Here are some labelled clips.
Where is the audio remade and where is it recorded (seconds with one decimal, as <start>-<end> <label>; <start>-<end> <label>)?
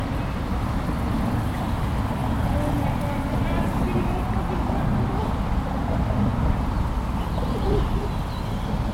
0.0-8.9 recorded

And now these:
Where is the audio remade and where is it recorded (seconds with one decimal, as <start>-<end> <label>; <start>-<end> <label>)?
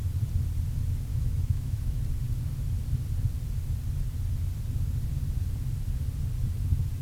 0.0-1.1 recorded; 1.1-2.0 remade; 2.0-7.0 recorded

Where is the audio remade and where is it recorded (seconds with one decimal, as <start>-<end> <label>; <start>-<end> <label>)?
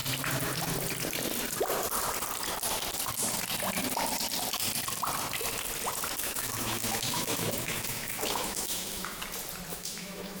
0.0-6.2 recorded; 6.2-9.2 remade; 9.2-9.7 recorded; 9.7-10.4 remade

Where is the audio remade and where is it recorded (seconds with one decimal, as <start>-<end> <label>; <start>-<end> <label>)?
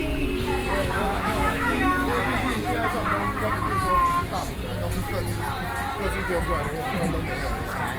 0.0-0.8 recorded; 0.8-1.9 remade; 1.9-8.0 recorded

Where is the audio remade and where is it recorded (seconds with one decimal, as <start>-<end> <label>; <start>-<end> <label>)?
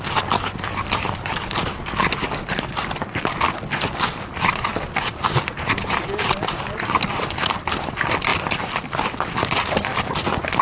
0.0-10.6 recorded